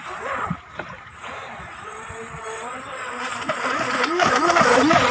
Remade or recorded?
remade